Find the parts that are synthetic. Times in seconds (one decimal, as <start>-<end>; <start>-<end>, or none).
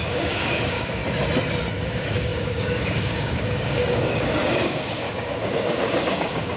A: 0.0-1.0; 1.7-6.6